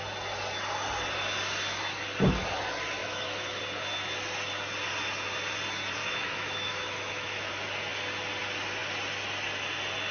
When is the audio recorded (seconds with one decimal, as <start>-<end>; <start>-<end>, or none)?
0.0-3.0; 3.6-6.0; 7.5-10.1